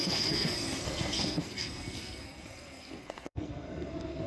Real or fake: fake